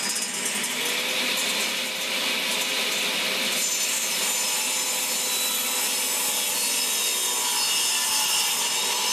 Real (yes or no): yes